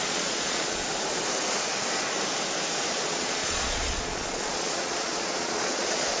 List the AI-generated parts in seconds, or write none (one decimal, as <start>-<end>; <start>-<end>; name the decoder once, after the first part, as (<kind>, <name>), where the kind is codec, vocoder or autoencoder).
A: 0.0-0.8 (vocoder, Vocos); 2.9-6.2